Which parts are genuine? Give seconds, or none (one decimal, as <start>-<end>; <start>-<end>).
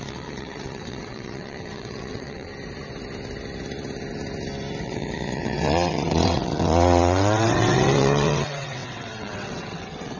2.5-4.8